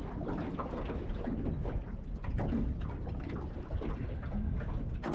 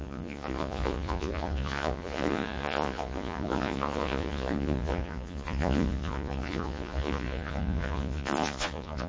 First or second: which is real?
first